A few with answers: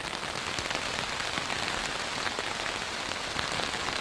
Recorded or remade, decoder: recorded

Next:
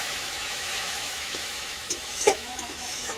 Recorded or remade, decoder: remade, autoencoder, DAC-VAE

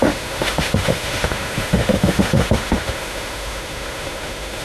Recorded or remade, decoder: remade, autoencoder, DAC-VAE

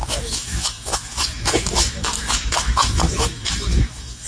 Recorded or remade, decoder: remade, autoencoder, DAC-VAE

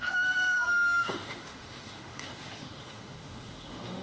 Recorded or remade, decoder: remade, autoencoder, DAC-VAE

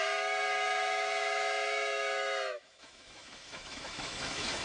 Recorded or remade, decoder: remade, autoencoder, DAC-VAE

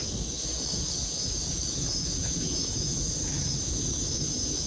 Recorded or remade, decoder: remade, autoencoder, DAC-VAE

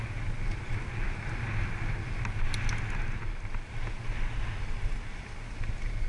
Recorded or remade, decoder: recorded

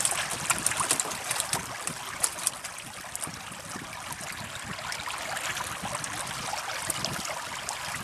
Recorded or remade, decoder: recorded